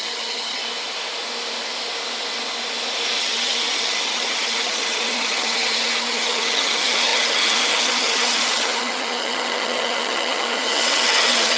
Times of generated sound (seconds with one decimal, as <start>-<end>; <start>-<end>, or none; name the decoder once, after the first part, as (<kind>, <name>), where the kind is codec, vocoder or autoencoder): 0.0-0.6 (vocoder, HiFi-GAN); 3.2-11.6